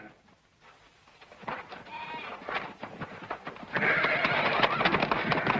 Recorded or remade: recorded